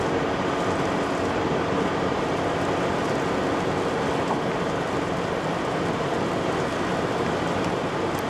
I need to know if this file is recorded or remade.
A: recorded